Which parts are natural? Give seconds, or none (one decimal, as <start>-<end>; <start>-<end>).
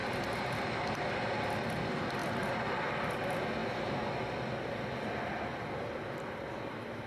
0.0-2.2; 2.8-3.6; 4.2-7.1